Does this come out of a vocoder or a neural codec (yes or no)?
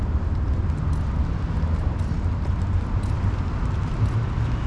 no